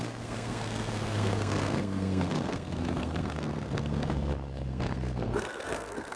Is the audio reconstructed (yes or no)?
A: yes